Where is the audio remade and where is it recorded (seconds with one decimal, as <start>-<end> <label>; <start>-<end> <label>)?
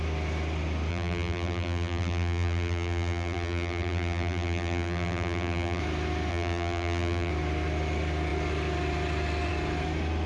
0.0-0.9 recorded; 0.9-5.8 remade; 5.8-6.3 recorded; 6.3-7.3 remade; 7.3-10.3 recorded